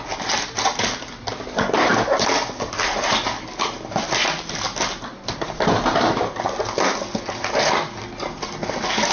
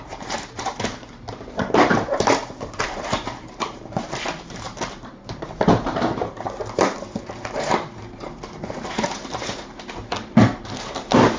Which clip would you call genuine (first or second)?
first